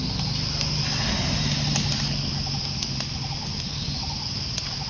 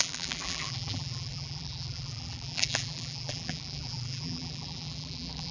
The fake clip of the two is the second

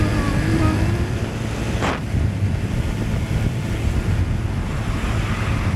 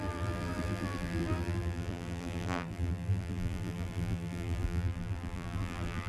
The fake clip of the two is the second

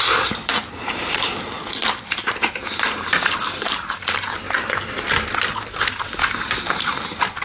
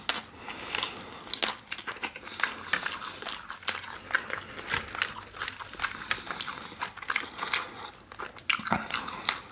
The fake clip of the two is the first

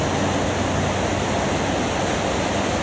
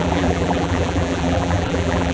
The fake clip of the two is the second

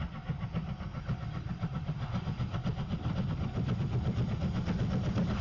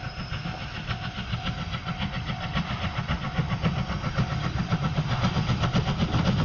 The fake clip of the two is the first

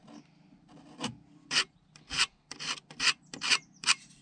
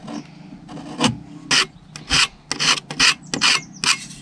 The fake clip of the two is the first